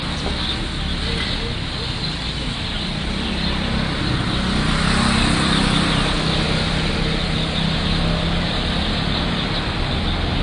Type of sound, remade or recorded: recorded